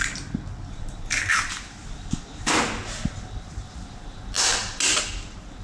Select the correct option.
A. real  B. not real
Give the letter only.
A